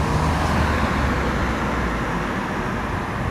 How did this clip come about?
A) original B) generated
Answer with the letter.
A